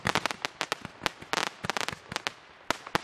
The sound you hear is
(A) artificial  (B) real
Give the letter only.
B